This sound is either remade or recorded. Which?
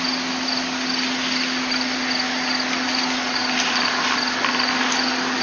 recorded